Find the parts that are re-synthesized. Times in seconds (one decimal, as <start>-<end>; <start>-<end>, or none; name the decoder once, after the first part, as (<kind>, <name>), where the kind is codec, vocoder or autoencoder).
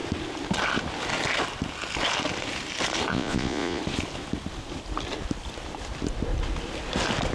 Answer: 3.1-3.8 (vocoder, Vocos)